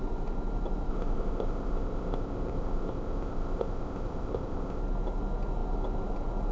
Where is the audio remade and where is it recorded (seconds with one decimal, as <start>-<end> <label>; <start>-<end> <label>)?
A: 0.0-0.9 recorded; 0.9-4.8 remade; 4.8-6.5 recorded